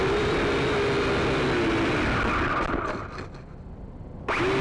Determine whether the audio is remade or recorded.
recorded